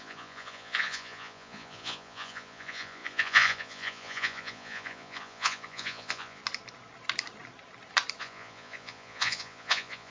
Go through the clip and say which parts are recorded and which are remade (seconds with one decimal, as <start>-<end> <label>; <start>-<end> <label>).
0.0-6.4 remade; 6.4-8.2 recorded; 8.2-10.1 remade